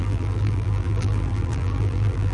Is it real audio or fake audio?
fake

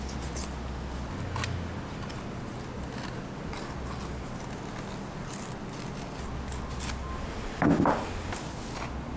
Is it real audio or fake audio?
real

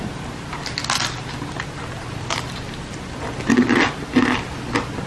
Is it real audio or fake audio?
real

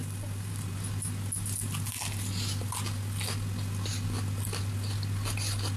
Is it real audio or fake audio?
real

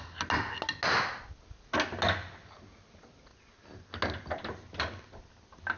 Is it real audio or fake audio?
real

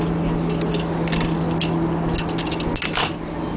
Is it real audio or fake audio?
real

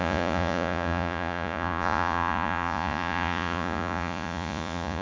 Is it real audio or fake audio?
fake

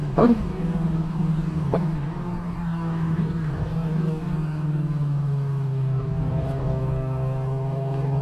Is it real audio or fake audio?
fake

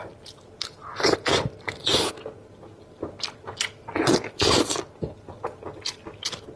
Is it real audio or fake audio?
real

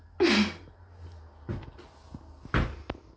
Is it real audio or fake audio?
real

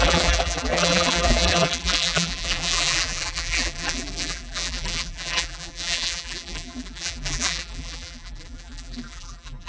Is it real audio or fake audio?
fake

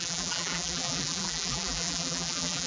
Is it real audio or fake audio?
fake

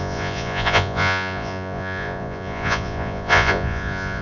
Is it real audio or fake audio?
fake